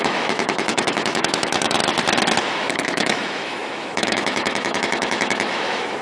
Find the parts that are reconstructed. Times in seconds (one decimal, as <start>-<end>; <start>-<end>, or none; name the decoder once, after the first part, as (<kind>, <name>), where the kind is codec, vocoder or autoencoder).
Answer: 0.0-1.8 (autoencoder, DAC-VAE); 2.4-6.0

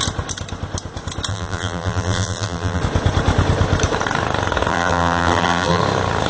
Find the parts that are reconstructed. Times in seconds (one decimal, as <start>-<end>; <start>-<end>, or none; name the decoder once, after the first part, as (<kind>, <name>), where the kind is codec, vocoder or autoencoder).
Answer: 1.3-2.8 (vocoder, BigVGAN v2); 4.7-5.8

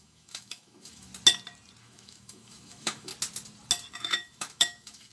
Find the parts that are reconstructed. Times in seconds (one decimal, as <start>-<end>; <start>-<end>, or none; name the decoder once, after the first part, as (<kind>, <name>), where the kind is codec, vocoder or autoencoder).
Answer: 0.0-1.1 (autoencoder, DAC-VAE); 1.8-3.1; 3.9-5.1

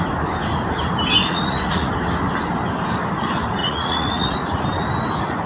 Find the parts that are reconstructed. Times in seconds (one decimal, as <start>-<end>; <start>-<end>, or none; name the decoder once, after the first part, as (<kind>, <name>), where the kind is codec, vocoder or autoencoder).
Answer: 1.2-1.9 (vocoder, Vocos); 3.6-4.6